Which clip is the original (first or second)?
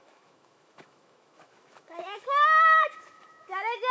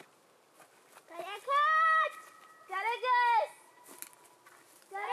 second